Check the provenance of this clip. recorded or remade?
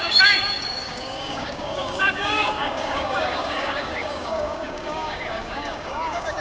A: remade